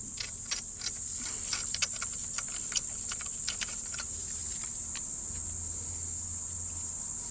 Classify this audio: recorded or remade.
recorded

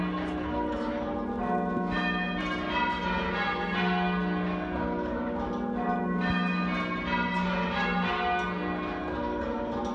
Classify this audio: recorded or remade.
recorded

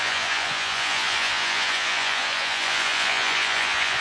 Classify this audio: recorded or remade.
remade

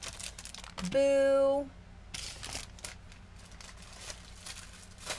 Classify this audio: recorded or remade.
recorded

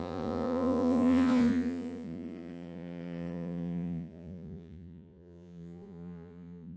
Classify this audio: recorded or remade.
remade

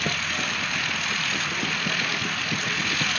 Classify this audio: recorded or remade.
recorded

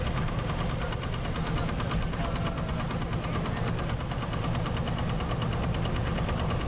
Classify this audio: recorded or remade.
recorded